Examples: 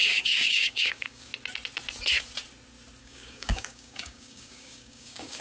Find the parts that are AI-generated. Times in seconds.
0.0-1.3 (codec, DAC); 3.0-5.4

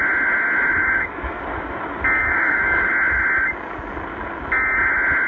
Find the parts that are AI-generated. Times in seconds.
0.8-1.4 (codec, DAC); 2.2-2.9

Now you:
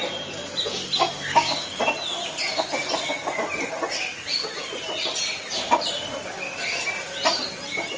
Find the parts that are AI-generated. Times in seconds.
1.3-1.8 (codec, DAC)

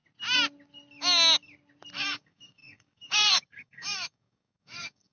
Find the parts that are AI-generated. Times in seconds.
1.9-5.1 (codec, DAC)

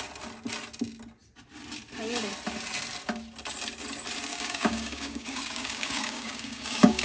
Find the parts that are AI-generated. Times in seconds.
4.3-7.0 (codec, DAC)

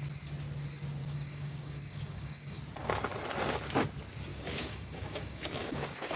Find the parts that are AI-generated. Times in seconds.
1.0-2.6 (codec, DAC); 4.3-6.2

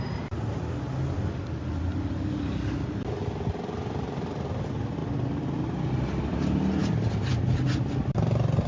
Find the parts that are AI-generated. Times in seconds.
none

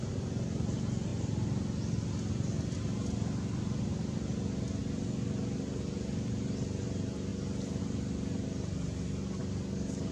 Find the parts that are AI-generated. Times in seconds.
9.4-10.1 (codec, DAC)